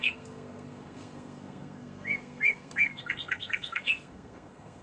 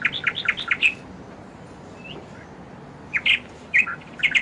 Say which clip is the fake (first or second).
first